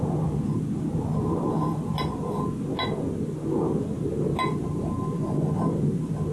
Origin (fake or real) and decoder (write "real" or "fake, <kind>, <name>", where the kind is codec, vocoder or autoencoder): real